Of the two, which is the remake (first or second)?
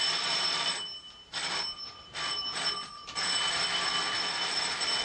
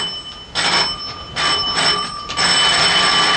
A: first